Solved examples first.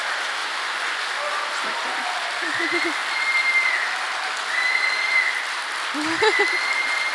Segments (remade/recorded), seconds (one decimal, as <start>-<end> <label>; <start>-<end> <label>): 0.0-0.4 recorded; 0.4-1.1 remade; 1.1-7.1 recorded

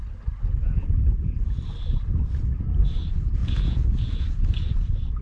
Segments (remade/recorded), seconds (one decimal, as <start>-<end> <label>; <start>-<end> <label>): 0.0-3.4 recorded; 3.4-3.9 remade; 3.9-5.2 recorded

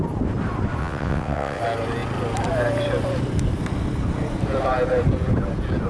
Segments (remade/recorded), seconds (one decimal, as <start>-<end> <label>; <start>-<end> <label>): 0.0-0.8 recorded; 0.8-1.6 remade; 1.6-5.9 recorded

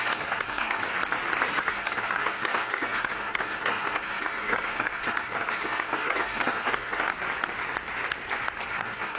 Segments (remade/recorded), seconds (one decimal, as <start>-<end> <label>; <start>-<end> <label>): 0.0-0.8 remade; 0.8-1.5 recorded; 1.5-7.1 remade; 7.1-8.7 recorded; 8.7-9.2 remade

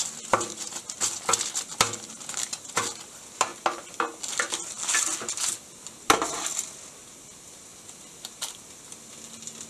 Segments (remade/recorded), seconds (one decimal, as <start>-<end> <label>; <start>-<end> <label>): 0.0-9.7 recorded

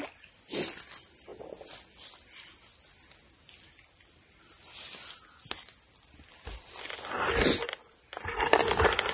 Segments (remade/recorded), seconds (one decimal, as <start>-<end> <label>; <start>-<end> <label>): 0.0-9.1 recorded

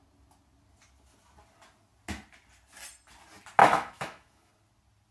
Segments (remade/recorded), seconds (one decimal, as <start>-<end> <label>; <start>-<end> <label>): 0.0-3.6 recorded; 3.6-4.5 remade; 4.5-5.1 recorded